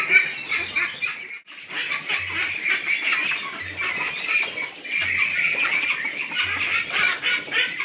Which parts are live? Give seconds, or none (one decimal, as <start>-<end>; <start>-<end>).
0.0-7.8